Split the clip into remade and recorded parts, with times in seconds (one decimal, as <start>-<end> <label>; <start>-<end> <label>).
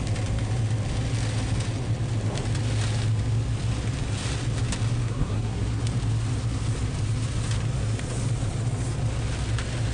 0.0-5.0 recorded; 5.0-5.8 remade; 5.8-9.9 recorded